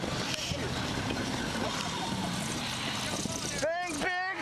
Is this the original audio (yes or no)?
yes